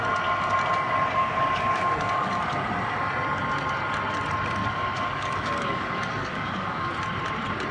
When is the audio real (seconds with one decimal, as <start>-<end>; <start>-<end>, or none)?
0.0-1.2; 2.4-4.6; 6.9-7.7